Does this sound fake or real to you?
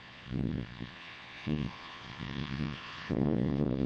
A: fake